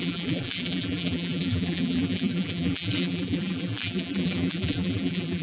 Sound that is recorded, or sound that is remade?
remade